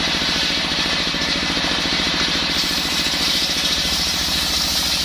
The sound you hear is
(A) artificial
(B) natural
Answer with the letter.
A